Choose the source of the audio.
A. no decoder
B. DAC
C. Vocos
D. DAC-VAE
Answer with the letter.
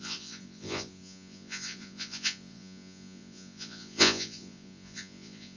C